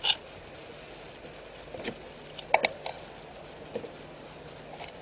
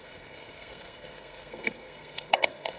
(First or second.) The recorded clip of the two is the first